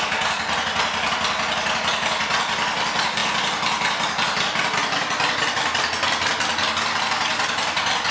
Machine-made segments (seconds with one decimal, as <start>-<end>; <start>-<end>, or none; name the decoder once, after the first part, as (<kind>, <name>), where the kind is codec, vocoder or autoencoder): none